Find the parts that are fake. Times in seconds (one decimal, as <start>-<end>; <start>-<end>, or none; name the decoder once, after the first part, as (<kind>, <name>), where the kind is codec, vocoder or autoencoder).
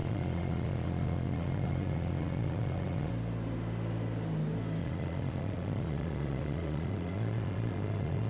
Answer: 0.0-3.1 (vocoder, Vocos); 4.8-8.3